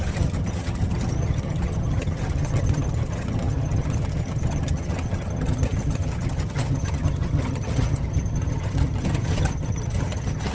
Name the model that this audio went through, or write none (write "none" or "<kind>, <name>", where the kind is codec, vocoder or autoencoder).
vocoder, HiFi-GAN